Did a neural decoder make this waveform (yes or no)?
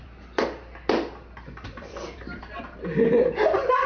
yes